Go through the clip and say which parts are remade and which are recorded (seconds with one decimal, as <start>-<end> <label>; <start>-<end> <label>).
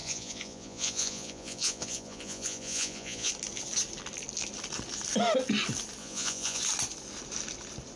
0.0-3.3 remade; 3.3-6.0 recorded; 6.0-6.6 remade; 6.6-8.0 recorded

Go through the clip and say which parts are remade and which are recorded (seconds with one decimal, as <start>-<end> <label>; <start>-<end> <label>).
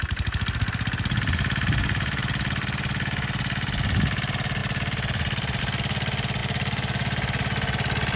0.0-8.2 recorded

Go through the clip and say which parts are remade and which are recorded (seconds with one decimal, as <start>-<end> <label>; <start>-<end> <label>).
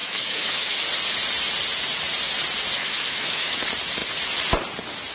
0.0-0.8 remade; 0.8-2.8 recorded; 2.8-3.6 remade; 3.6-5.1 recorded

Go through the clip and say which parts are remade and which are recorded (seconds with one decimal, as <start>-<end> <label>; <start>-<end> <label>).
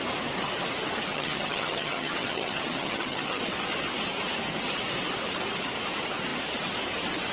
0.0-1.1 recorded; 1.1-3.4 remade; 3.4-7.3 recorded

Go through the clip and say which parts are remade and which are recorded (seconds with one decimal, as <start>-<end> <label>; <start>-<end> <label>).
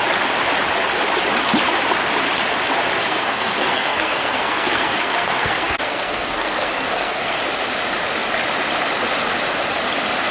0.0-3.0 recorded; 3.0-7.4 remade; 7.4-10.3 recorded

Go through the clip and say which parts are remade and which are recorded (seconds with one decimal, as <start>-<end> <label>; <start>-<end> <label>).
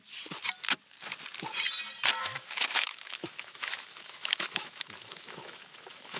0.0-2.2 recorded; 2.2-6.2 remade